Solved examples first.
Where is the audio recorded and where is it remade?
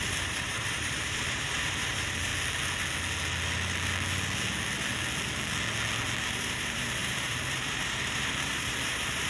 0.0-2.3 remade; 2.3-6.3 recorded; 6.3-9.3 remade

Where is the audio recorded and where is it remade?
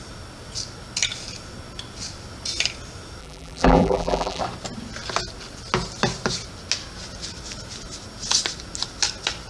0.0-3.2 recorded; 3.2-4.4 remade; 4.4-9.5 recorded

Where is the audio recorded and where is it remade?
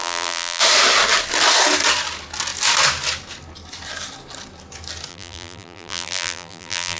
0.0-0.6 remade; 0.6-5.1 recorded; 5.1-7.0 remade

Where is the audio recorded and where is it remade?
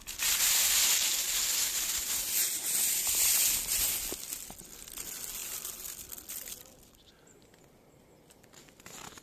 0.0-5.4 recorded; 5.4-7.1 remade; 7.1-9.2 recorded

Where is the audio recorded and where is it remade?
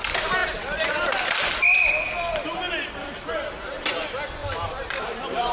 0.0-3.0 recorded; 3.0-3.9 remade; 3.9-4.4 recorded; 4.4-5.5 remade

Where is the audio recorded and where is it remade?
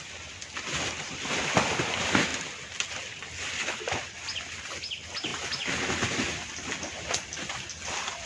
0.0-2.3 remade; 2.3-2.9 recorded; 2.9-5.3 remade; 5.3-6.3 recorded; 6.3-8.3 remade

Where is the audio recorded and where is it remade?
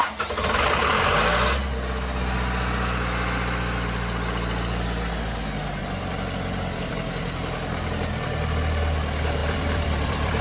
0.0-5.8 recorded; 5.8-6.9 remade; 6.9-9.4 recorded; 9.4-10.4 remade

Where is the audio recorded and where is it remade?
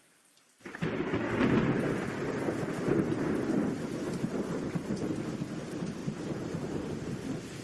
0.0-6.0 recorded; 6.0-7.1 remade; 7.1-7.6 recorded